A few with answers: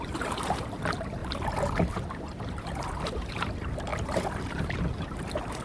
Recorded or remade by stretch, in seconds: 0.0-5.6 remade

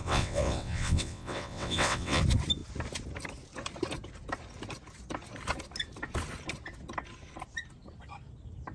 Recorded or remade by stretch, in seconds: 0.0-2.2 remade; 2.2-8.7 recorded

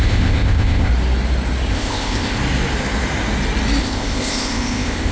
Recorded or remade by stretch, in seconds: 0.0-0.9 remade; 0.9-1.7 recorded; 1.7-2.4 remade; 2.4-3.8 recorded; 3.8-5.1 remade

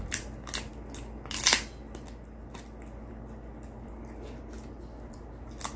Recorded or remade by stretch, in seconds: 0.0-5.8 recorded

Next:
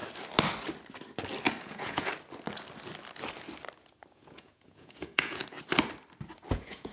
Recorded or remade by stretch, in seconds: 0.0-1.6 recorded; 1.6-2.1 remade; 2.1-4.1 recorded; 4.1-5.4 remade; 5.4-6.5 recorded; 6.5-6.9 remade